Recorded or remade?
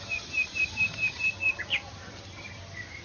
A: recorded